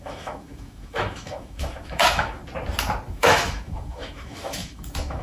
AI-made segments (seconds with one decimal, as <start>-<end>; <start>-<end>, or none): 0.0-2.4; 3.1-5.2